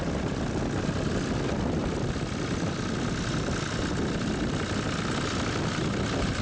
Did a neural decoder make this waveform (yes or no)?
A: no